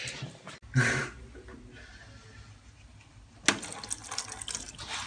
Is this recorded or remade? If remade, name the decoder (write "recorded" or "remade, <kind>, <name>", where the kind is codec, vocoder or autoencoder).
recorded